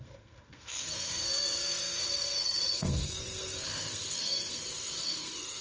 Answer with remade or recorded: remade